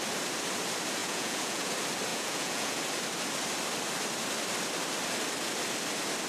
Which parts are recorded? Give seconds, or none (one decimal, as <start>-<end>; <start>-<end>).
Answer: 0.0-1.0; 1.7-2.1; 2.8-6.3